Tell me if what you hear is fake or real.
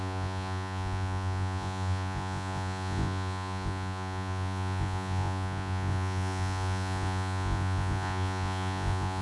fake